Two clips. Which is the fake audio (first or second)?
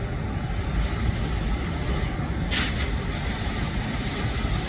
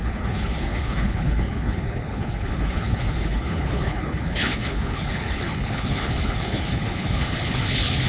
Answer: second